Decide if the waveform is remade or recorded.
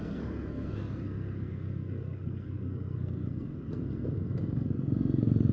remade